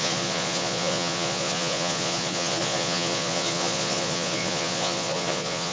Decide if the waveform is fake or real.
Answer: fake